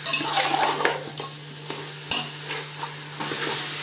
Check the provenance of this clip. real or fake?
real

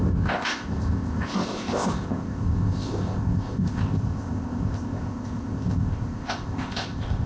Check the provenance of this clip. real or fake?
fake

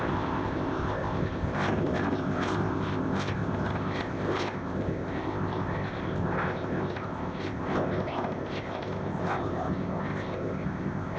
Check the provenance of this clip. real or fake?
fake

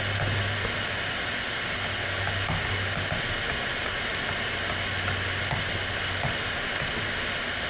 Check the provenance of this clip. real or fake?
real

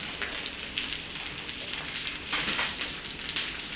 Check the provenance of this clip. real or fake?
real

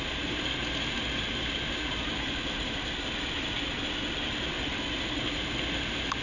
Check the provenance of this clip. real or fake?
real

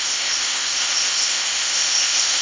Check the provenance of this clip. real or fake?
fake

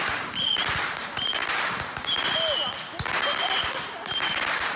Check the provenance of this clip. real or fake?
real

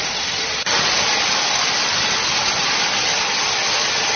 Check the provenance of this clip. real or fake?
real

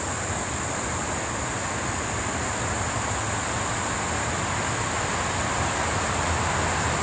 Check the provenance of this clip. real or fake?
real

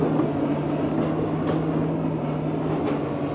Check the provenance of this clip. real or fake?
real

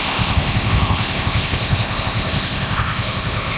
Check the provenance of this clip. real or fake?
fake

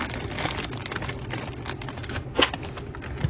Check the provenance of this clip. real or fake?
real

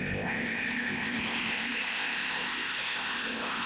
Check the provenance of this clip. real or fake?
fake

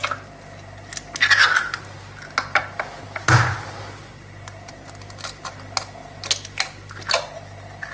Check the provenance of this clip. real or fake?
real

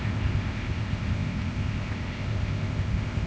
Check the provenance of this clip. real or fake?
fake